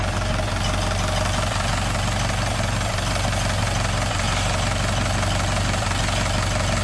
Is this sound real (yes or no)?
yes